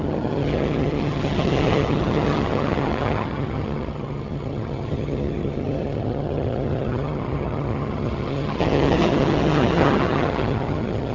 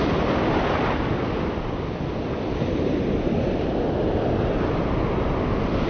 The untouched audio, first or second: second